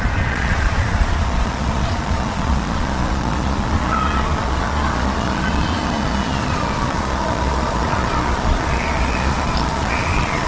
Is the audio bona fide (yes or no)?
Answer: no